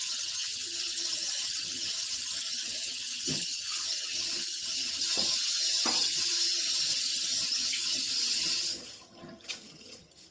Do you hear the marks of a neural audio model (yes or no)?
yes